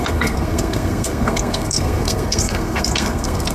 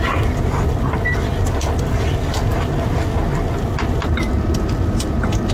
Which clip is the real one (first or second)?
second